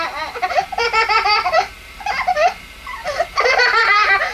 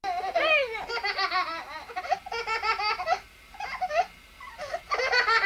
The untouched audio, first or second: second